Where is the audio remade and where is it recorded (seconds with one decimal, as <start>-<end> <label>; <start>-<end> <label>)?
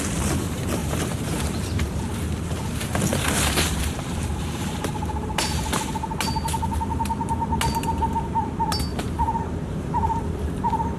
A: 0.0-0.8 recorded; 0.8-2.0 remade; 2.0-3.1 recorded; 3.1-5.9 remade; 5.9-8.9 recorded; 8.9-10.5 remade; 10.5-11.0 recorded